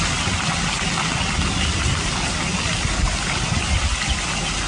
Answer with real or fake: real